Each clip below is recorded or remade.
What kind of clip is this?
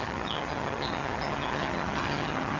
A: remade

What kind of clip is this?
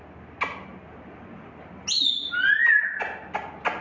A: recorded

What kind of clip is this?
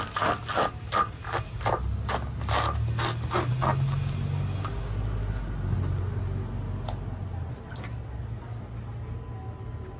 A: recorded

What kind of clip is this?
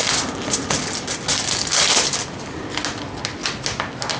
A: recorded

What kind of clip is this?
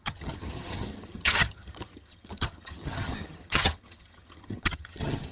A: remade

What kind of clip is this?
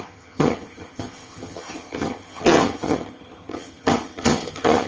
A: remade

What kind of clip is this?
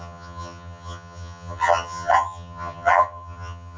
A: remade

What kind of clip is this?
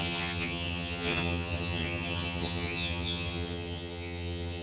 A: remade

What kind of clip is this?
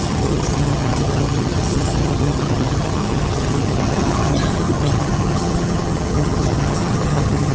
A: remade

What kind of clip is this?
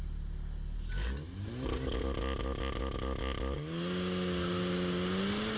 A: recorded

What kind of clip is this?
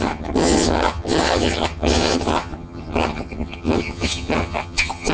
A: remade